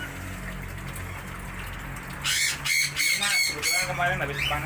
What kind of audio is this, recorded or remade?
recorded